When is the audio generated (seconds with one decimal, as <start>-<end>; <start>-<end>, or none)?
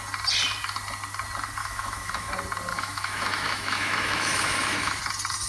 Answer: 1.6-2.3; 2.7-5.0